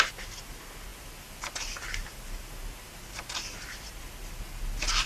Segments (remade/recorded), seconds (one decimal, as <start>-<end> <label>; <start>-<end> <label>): 0.0-5.1 recorded